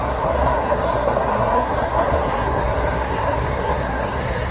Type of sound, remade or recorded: remade